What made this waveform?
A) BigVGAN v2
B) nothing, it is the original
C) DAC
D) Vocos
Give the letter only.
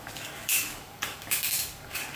C